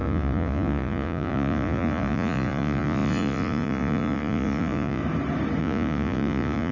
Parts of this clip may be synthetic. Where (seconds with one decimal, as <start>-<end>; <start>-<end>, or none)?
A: 0.0-5.0; 5.6-6.7